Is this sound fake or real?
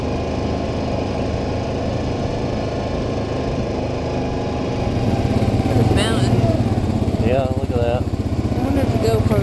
real